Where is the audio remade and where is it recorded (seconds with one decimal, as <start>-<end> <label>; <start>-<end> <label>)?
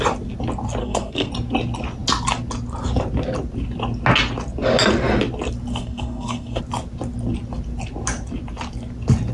0.0-0.8 recorded; 0.8-1.3 remade; 1.3-5.7 recorded; 5.7-6.6 remade; 6.6-9.3 recorded